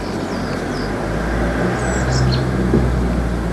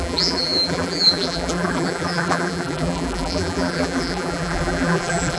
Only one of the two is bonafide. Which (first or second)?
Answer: first